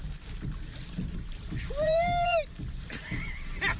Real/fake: fake